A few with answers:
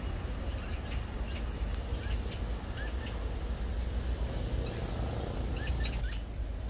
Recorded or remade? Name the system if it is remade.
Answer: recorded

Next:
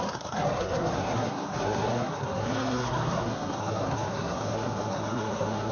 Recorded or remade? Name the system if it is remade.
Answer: remade, codec, SNAC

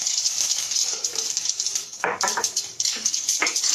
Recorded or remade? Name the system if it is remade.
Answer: remade, codec, DAC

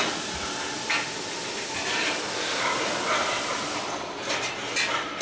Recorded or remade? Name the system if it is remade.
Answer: recorded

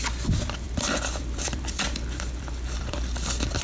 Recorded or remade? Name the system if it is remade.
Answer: remade, vocoder, BigVGAN v2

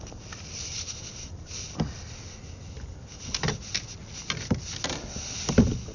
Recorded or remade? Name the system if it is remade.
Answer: recorded